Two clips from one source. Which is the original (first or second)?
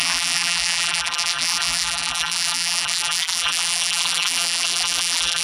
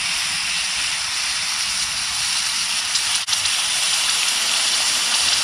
second